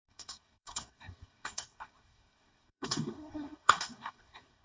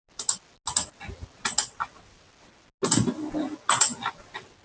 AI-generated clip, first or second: first